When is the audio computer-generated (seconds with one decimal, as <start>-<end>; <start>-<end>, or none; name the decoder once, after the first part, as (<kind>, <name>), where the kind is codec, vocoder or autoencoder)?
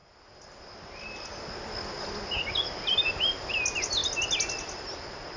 none